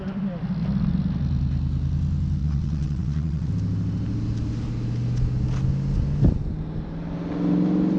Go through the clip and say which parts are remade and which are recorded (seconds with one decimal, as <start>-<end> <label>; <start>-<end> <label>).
0.0-2.4 recorded; 2.4-3.5 remade; 3.5-8.0 recorded